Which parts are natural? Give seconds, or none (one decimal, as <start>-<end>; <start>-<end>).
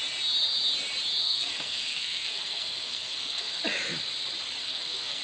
0.0-1.2; 3.6-4.6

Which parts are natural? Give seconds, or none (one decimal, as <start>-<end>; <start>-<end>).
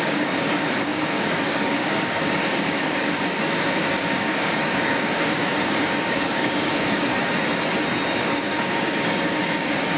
7.1-8.2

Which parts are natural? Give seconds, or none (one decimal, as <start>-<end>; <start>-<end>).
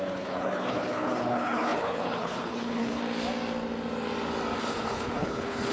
3.0-4.6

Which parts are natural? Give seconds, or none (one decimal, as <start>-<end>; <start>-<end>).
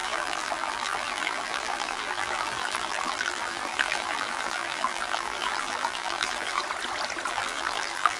6.6-7.3